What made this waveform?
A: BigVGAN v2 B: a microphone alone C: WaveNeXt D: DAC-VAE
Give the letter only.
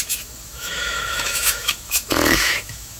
D